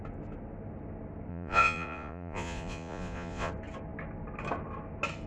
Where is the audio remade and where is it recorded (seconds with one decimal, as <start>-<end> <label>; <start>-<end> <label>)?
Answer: 0.0-1.3 recorded; 1.3-3.5 remade; 3.5-5.3 recorded